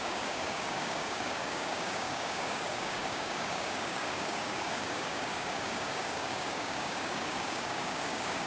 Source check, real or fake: fake